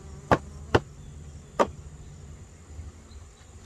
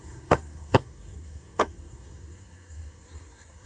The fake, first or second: second